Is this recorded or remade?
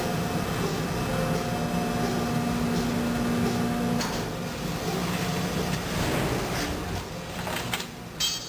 recorded